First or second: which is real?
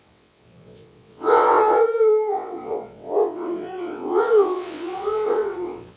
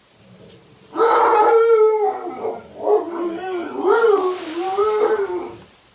second